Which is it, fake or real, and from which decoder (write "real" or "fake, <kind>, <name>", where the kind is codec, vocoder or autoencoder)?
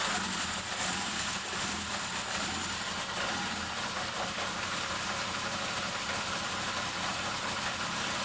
real